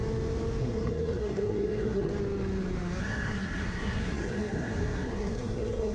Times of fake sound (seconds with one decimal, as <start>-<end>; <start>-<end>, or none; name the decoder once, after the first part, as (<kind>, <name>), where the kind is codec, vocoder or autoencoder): 0.6-2.1 (codec, SNAC); 3.0-5.9